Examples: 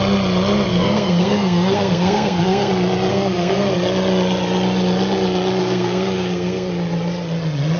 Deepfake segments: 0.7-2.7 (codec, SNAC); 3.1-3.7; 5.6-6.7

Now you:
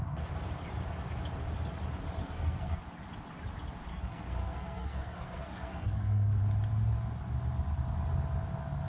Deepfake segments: 2.2-2.8 (codec, SNAC); 3.9-6.4